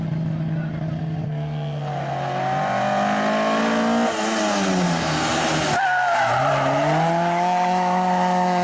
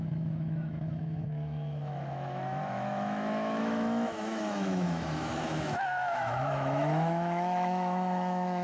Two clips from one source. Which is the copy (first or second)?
second